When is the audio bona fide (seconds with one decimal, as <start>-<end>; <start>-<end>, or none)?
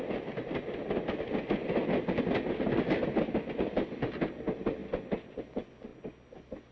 0.0-4.8; 5.3-6.7